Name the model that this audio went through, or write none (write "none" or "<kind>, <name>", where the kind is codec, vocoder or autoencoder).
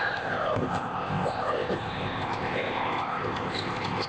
codec, ZipCodec